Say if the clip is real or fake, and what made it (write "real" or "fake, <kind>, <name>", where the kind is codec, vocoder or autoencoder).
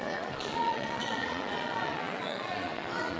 fake, vocoder, Vocos